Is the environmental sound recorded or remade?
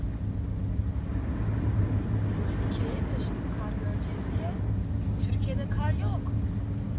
recorded